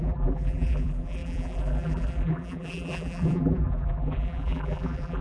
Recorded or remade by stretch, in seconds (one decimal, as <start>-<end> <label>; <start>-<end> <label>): 0.0-5.2 remade